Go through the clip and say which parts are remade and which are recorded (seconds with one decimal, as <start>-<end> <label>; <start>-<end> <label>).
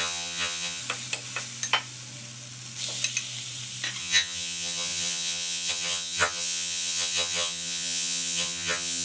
0.0-0.8 remade; 0.8-4.0 recorded; 4.0-9.0 remade